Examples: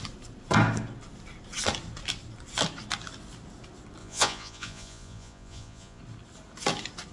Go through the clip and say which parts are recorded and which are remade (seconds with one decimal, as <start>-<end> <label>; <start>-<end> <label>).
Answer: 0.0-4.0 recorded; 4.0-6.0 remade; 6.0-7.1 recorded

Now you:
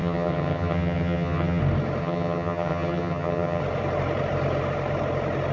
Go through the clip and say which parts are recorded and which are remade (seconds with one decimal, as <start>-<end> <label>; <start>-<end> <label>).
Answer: 0.0-1.6 remade; 1.6-2.0 recorded; 2.0-3.6 remade; 3.6-5.5 recorded

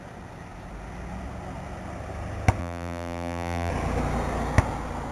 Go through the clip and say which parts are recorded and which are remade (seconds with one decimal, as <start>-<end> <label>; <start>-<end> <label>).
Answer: 0.0-2.6 recorded; 2.6-3.7 remade; 3.7-5.1 recorded

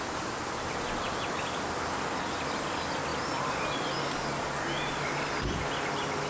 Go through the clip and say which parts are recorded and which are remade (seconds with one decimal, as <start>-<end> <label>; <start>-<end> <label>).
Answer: 0.0-6.3 recorded

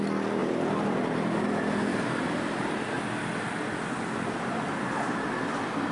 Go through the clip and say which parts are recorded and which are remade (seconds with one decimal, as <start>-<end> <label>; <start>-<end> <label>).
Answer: 0.0-0.4 recorded; 0.4-1.1 remade; 1.1-1.9 recorded; 1.9-2.8 remade; 2.8-5.9 recorded

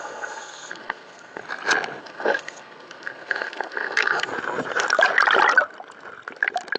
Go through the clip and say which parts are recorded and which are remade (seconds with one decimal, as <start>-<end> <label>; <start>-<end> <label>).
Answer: 0.0-1.4 remade; 1.4-2.0 recorded; 2.0-4.3 remade; 4.3-6.8 recorded

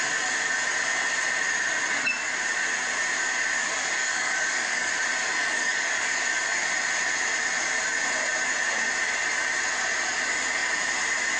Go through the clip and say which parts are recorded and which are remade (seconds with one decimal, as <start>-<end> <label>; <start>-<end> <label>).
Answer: 0.0-4.0 recorded; 4.0-4.9 remade; 4.9-5.4 recorded; 5.4-6.2 remade; 6.2-11.4 recorded